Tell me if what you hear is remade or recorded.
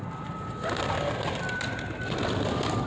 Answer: recorded